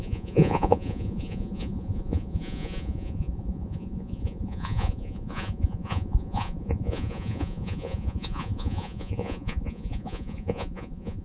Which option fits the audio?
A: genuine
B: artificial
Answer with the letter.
B